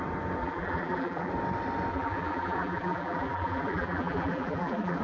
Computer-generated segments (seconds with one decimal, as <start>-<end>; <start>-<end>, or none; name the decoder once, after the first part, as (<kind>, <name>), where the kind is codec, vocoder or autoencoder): 0.4-1.3 (vocoder, BigVGAN v2); 1.9-5.0